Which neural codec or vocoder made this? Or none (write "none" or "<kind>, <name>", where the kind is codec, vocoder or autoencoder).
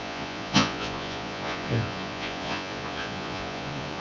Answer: vocoder, Vocos